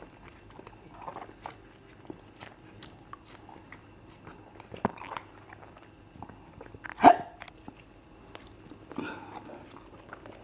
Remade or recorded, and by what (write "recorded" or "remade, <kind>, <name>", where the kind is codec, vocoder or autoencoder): recorded